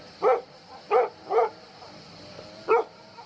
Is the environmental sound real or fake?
real